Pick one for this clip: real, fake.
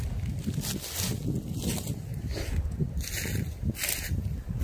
real